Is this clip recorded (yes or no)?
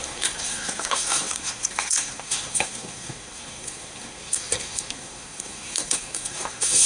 no